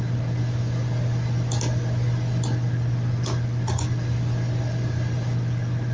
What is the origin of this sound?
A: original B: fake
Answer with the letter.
A